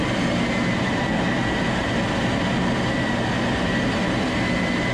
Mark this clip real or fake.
real